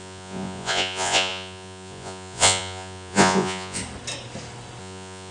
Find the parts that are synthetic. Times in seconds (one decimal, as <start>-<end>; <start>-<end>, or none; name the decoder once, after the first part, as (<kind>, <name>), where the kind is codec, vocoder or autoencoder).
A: 0.0-3.8 (vocoder, Vocos); 4.8-5.3